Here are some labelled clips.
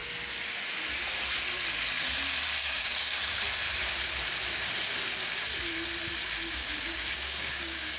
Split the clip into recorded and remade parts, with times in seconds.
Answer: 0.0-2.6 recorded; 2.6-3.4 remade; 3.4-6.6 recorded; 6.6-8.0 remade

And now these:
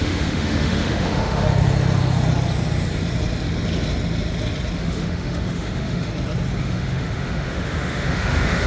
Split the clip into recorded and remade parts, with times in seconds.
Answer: 0.0-1.5 remade; 1.5-4.8 recorded; 4.8-6.1 remade; 6.1-6.6 recorded; 6.6-8.7 remade

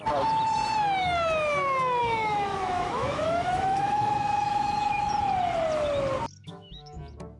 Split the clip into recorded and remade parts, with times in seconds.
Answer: 0.0-2.0 recorded; 2.0-5.1 remade; 5.1-6.4 recorded; 6.4-7.0 remade; 7.0-7.4 recorded

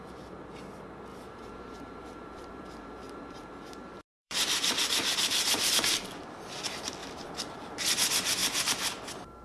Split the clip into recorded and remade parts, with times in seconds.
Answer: 0.0-1.1 recorded; 1.1-5.7 remade; 5.7-7.0 recorded; 7.0-7.8 remade; 7.8-8.4 recorded; 8.4-9.0 remade; 9.0-9.4 recorded